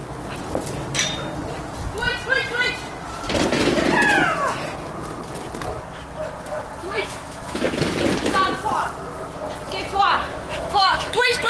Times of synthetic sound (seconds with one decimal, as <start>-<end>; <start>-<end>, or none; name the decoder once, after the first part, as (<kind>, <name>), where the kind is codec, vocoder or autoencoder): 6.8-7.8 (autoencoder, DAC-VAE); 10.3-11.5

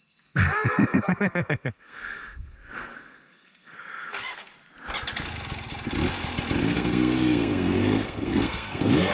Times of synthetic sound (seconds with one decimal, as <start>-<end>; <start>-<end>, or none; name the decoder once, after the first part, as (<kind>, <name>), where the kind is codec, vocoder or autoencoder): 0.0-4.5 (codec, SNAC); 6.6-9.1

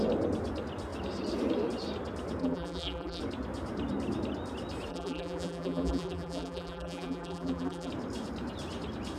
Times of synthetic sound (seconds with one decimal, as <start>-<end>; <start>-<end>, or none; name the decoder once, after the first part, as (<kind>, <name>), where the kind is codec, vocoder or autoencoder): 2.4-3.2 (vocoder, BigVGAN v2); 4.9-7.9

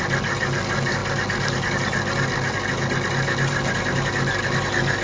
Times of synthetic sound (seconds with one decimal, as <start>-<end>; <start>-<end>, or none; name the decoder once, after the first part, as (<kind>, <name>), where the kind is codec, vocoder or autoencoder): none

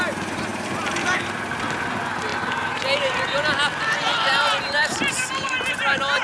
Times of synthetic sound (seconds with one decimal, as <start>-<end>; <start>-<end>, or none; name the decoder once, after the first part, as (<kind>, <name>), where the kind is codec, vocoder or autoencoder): none

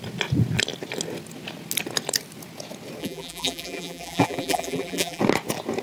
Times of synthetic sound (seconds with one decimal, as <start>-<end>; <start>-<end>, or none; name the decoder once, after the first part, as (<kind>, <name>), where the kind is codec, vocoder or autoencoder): 3.0-5.2 (vocoder, BigVGAN v2)